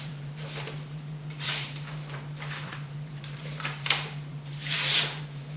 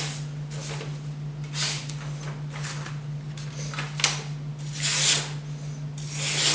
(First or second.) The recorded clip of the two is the second